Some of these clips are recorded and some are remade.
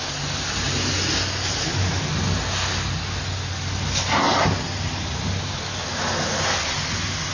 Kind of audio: recorded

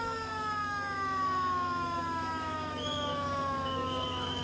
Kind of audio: remade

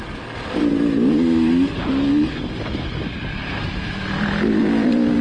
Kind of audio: recorded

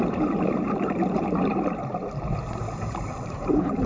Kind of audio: remade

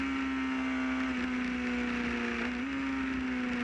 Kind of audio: recorded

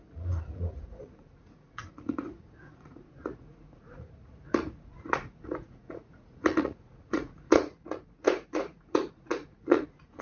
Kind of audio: remade